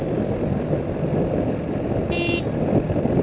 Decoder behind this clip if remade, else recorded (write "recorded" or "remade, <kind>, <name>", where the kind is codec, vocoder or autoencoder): recorded